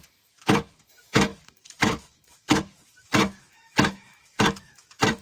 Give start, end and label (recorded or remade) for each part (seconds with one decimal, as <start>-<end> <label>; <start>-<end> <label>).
0.0-5.2 remade